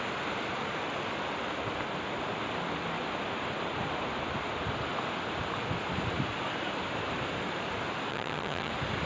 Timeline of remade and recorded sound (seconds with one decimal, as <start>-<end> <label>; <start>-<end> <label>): 0.0-8.1 recorded; 8.1-8.7 remade; 8.7-9.1 recorded